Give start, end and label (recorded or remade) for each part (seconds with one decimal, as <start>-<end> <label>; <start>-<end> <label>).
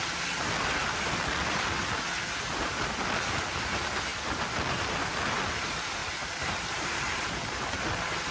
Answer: 0.0-6.0 recorded; 6.0-7.6 remade; 7.6-8.3 recorded